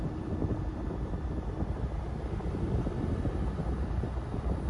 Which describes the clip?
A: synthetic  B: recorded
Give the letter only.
B